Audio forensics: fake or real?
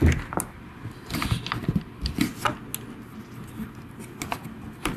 real